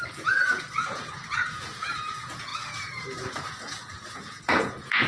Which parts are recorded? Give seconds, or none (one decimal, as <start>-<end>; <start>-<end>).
none